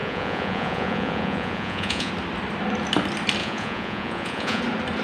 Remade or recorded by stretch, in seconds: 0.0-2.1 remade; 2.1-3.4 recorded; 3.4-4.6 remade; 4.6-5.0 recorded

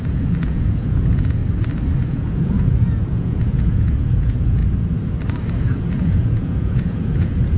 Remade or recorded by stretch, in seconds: 0.0-1.4 remade; 1.4-2.1 recorded; 2.1-4.6 remade; 4.6-5.6 recorded; 5.6-7.6 remade

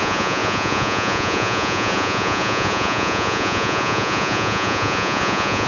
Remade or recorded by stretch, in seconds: 0.0-5.7 remade

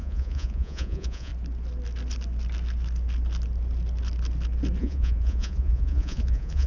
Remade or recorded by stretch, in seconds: 0.0-1.3 remade; 1.3-4.8 recorded; 4.8-6.7 remade

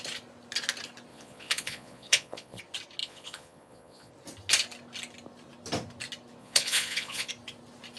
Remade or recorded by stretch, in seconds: 0.0-1.1 recorded; 1.1-2.6 remade; 2.6-3.0 recorded; 3.0-4.1 remade; 4.1-6.4 recorded; 6.4-7.3 remade; 7.3-8.0 recorded